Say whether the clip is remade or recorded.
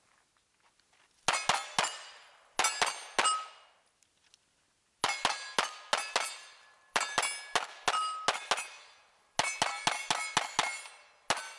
recorded